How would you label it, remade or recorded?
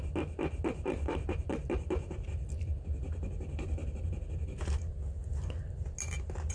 recorded